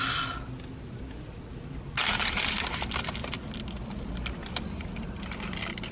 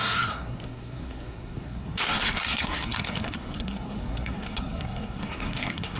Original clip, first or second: first